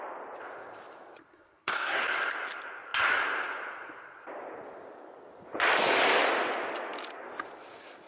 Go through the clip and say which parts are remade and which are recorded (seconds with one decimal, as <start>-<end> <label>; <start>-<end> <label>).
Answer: 0.0-1.3 recorded; 1.3-2.0 remade; 2.0-8.1 recorded